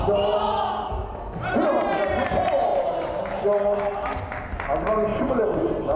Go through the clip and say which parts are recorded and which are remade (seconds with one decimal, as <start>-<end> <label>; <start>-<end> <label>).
0.0-2.7 recorded; 2.7-3.2 remade; 3.2-5.1 recorded; 5.1-6.0 remade